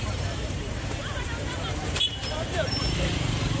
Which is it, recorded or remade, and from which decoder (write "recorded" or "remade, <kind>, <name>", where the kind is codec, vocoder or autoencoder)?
remade, vocoder, BigVGAN v2